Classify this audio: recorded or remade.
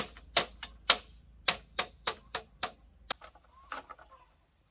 recorded